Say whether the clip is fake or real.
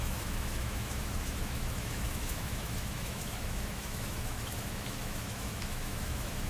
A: fake